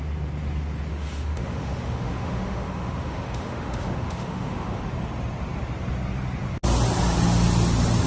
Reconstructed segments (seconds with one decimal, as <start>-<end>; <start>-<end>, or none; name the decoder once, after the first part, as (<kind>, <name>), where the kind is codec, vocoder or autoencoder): 0.9-4.8 (autoencoder, DAC-VAE)